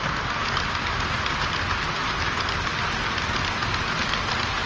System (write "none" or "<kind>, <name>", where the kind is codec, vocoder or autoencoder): none